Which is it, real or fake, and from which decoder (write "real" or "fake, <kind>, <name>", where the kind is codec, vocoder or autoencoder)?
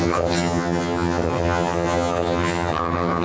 fake, vocoder, HiFi-GAN